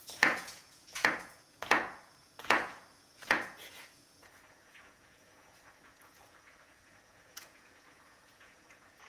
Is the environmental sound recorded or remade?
remade